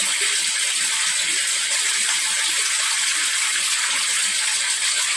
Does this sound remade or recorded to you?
recorded